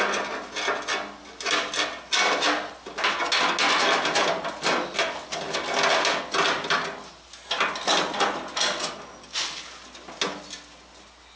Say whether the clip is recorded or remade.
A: recorded